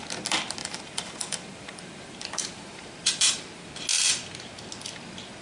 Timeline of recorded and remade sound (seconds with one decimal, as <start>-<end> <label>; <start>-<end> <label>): 0.0-0.6 recorded; 0.6-3.7 remade; 3.7-5.4 recorded

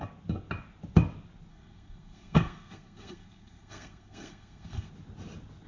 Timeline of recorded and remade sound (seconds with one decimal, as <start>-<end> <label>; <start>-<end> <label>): 0.0-1.5 recorded; 1.5-4.9 remade; 4.9-5.7 recorded

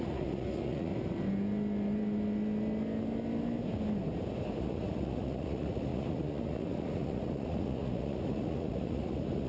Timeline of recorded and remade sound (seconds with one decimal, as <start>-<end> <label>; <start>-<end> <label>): 0.0-0.9 remade; 0.9-4.6 recorded; 4.6-9.5 remade

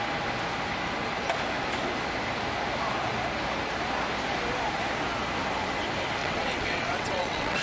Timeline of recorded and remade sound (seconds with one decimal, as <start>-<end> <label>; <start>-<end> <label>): 0.0-6.2 recorded; 6.2-7.6 remade

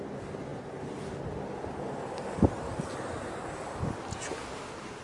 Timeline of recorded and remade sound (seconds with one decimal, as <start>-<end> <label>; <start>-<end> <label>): 0.0-5.0 recorded

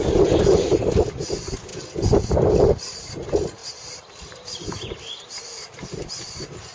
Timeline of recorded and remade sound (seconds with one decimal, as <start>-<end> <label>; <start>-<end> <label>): 0.0-3.6 recorded; 3.6-5.1 remade; 5.1-6.7 recorded

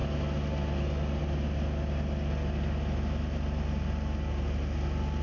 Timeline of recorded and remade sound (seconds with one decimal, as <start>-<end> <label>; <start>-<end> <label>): 0.0-5.2 recorded